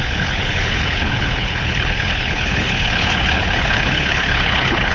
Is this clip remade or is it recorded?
remade